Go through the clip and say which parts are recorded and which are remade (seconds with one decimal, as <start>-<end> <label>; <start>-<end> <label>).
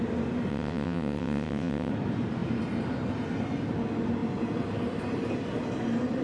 0.0-0.5 recorded; 0.5-1.9 remade; 1.9-6.2 recorded